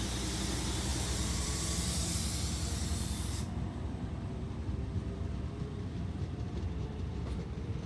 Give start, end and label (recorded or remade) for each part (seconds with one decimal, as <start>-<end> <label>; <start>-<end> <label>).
0.0-0.9 recorded; 0.9-2.1 remade; 2.1-2.9 recorded; 2.9-7.9 remade